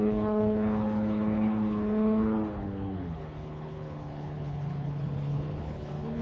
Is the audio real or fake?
fake